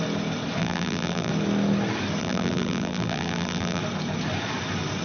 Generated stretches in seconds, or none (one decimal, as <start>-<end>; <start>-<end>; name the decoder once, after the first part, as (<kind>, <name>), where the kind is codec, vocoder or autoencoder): 0.6-1.3 (vocoder, BigVGAN v2); 2.2-3.8